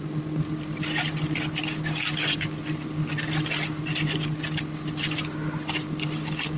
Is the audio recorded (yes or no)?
yes